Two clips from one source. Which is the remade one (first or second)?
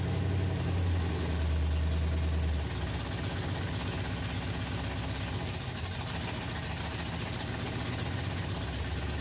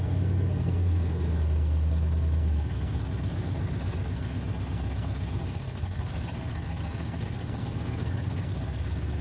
second